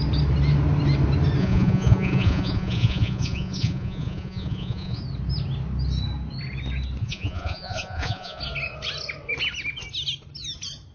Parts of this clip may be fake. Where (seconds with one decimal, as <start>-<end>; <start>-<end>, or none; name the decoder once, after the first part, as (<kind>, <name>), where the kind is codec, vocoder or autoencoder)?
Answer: 1.4-5.0 (vocoder, Vocos); 7.0-8.4